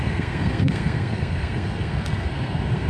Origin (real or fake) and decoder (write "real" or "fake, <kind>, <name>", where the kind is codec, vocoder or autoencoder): fake, codec, SNAC